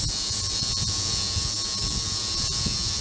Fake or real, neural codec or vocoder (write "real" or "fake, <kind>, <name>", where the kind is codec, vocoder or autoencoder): fake, vocoder, Vocos